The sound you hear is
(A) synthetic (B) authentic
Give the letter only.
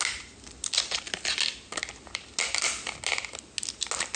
B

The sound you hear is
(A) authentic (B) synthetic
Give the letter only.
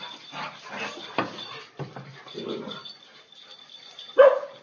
A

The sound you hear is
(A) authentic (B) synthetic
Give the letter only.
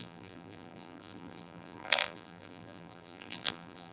B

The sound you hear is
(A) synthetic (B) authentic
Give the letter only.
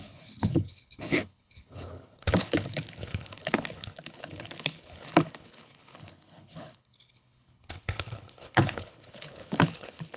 A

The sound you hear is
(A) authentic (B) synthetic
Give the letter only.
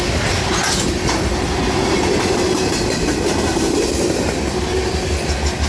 A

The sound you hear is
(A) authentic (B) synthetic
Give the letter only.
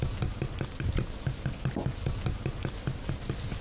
A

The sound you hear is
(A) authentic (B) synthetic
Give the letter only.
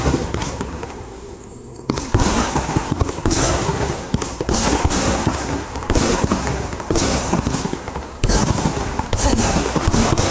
B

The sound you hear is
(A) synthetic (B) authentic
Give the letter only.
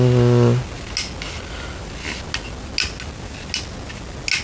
B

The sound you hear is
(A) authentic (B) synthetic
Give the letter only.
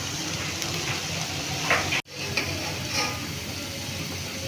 A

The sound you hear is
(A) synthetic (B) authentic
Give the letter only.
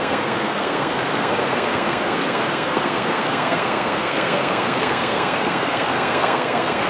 A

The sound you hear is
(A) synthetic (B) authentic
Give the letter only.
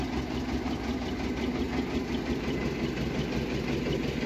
B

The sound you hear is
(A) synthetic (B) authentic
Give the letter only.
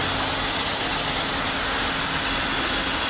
B